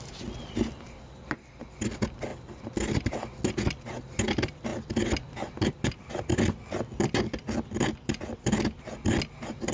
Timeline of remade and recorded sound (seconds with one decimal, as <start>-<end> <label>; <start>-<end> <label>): 0.0-9.7 recorded